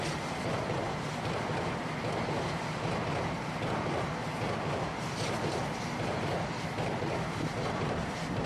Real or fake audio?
real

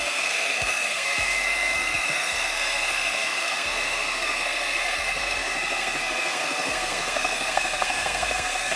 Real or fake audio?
fake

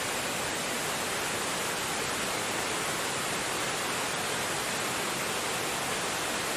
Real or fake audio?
real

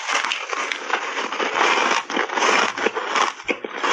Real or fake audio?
real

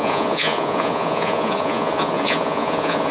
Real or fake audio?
fake